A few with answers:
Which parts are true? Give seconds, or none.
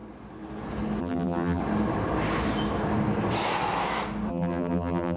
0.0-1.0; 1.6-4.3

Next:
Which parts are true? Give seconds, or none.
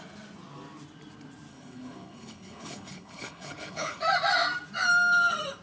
0.0-1.5; 4.0-5.6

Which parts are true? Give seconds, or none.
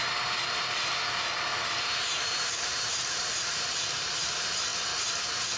0.0-1.5; 4.2-5.6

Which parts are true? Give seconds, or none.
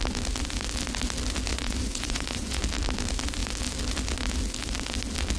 0.0-1.5; 2.6-5.4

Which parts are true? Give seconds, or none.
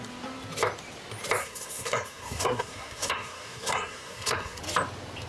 0.0-1.4; 4.6-5.3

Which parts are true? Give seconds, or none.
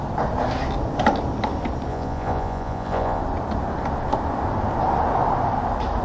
0.0-1.9; 3.2-6.0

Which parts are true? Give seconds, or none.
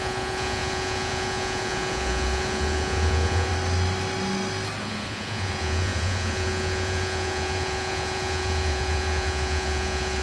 3.5-4.8